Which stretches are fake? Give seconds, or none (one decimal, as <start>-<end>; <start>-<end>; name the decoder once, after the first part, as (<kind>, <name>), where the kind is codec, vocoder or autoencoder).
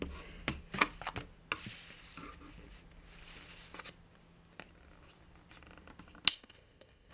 6.3-7.1 (codec, ZipCodec)